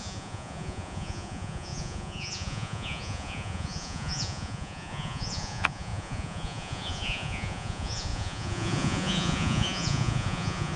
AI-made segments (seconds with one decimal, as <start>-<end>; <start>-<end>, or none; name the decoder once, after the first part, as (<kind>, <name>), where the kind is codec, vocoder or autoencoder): 0.0-10.8 (vocoder, Vocos)